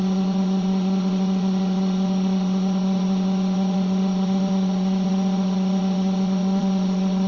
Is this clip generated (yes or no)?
yes